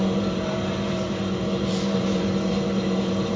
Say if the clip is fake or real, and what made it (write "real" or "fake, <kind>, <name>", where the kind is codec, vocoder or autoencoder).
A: fake, vocoder, BigVGAN v2